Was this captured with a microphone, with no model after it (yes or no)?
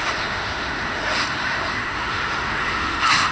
no